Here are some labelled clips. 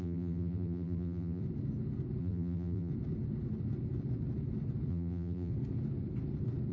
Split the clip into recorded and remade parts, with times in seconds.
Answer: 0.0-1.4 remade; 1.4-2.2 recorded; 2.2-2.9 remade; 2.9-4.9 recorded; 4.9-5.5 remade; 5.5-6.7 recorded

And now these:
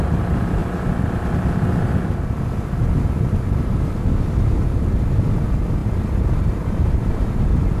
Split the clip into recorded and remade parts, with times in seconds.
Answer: 0.0-0.6 remade; 0.6-5.3 recorded; 5.3-7.8 remade

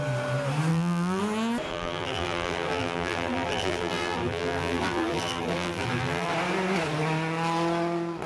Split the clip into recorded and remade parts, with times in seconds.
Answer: 0.0-0.7 recorded; 0.7-1.2 remade; 1.2-1.7 recorded; 1.7-6.3 remade; 6.3-8.3 recorded

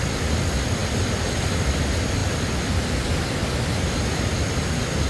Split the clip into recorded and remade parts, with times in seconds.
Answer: 0.0-0.8 recorded; 0.8-1.8 remade; 1.8-2.2 recorded; 2.2-2.9 remade; 2.9-5.1 recorded

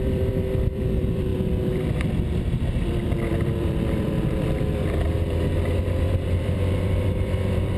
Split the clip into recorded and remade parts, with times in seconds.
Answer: 0.0-7.8 remade

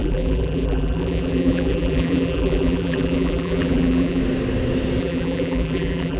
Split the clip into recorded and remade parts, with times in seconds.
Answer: 0.0-4.2 remade; 4.2-5.0 recorded; 5.0-6.2 remade

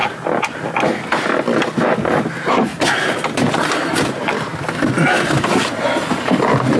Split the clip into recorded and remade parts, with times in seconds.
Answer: 0.0-2.3 recorded; 2.3-2.7 remade; 2.7-5.6 recorded; 5.6-6.8 remade